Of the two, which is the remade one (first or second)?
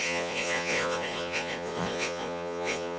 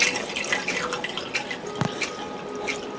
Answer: first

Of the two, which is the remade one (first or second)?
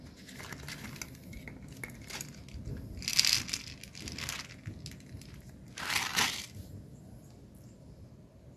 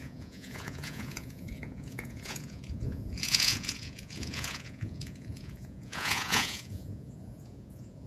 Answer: second